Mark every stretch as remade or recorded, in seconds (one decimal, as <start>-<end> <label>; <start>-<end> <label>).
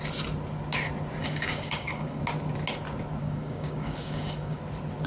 0.0-1.2 recorded; 1.2-2.2 remade; 2.2-3.2 recorded; 3.2-4.6 remade; 4.6-5.1 recorded